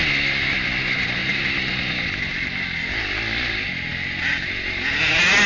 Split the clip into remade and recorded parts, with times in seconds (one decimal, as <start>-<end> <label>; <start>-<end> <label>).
0.0-5.5 recorded